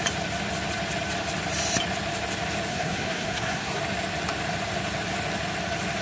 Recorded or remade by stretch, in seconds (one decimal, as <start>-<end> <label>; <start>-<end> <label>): 0.0-2.7 recorded; 2.7-3.8 remade; 3.8-6.0 recorded